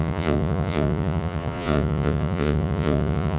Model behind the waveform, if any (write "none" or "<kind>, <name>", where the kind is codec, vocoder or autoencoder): vocoder, Vocos